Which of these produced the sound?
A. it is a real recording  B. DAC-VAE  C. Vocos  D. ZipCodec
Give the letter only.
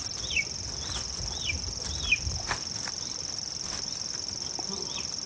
A